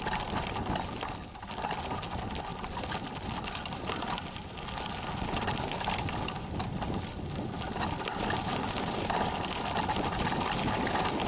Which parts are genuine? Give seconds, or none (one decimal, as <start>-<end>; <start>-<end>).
0.0-11.3